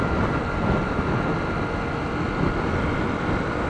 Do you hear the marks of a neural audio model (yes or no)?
no